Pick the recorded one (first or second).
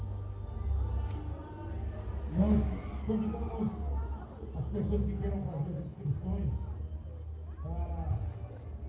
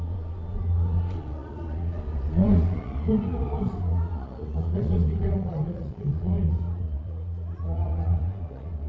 first